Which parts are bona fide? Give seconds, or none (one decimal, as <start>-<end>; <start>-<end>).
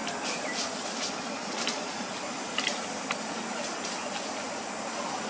0.0-5.3